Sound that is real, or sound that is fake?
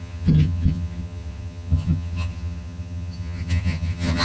fake